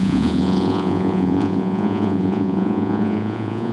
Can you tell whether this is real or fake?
fake